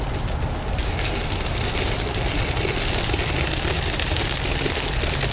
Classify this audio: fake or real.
real